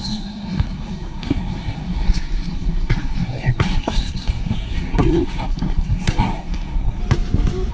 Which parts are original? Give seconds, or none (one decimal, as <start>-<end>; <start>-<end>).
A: 7.0-7.7